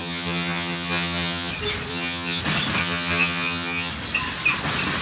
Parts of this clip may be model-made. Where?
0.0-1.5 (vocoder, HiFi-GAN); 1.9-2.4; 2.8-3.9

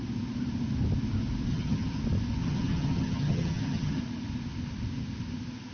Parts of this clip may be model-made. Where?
1.5-2.0 (vocoder, HiFi-GAN); 2.4-4.0

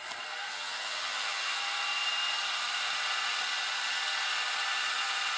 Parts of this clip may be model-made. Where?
0.5-1.6 (vocoder, HiFi-GAN)

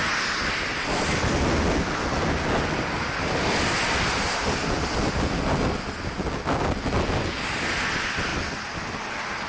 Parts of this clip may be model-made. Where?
none

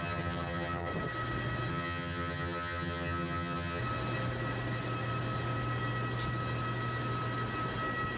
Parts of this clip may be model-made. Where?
0.0-0.9 (vocoder, HiFi-GAN); 1.7-3.8

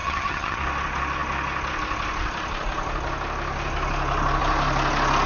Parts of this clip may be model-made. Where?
0.0-0.6 (vocoder, HiFi-GAN)

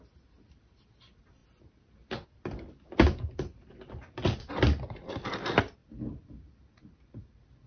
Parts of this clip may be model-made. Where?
none

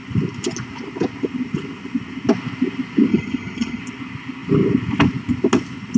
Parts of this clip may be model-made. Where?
3.1-3.8 (vocoder, HiFi-GAN)